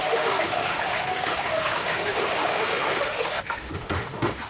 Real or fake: fake